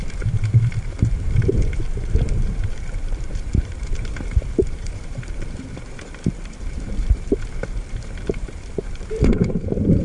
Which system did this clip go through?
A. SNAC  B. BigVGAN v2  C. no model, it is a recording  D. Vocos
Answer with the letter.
B